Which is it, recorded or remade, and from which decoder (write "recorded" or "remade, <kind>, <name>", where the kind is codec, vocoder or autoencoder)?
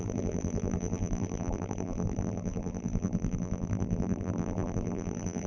remade, vocoder, BigVGAN v2